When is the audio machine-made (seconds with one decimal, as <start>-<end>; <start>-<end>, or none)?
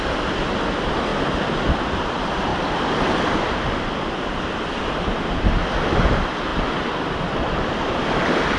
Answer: 6.5-8.2